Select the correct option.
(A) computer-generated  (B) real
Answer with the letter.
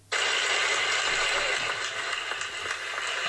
B